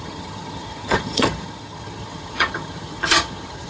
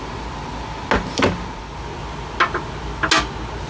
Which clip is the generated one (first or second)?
first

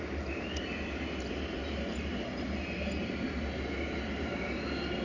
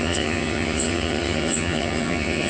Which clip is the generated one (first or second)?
second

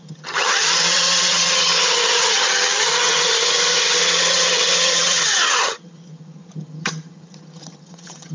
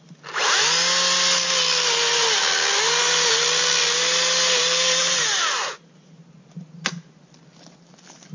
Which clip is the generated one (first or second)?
first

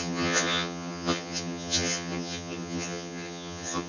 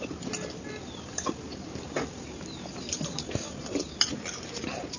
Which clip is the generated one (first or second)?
first